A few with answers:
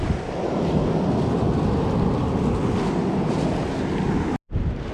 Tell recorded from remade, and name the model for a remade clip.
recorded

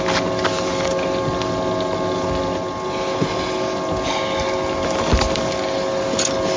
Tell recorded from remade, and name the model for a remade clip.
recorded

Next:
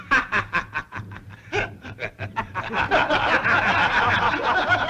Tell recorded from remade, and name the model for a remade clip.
remade, vocoder, BigVGAN v2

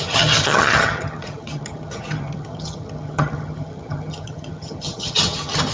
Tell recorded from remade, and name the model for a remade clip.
remade, vocoder, HiFi-GAN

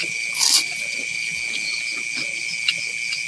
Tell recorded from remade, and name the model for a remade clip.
recorded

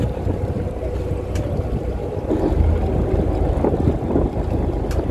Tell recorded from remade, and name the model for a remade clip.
recorded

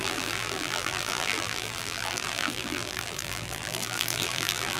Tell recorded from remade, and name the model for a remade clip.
remade, vocoder, BigVGAN v2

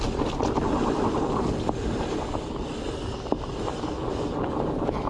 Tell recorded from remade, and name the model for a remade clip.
recorded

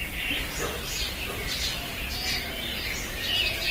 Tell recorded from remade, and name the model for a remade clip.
recorded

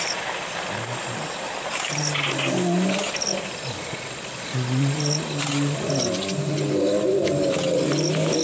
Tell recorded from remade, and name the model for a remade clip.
recorded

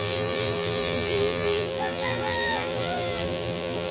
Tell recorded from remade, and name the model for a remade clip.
remade, vocoder, BigVGAN v2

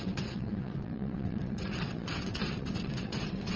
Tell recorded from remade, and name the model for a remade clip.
remade, vocoder, WaveNeXt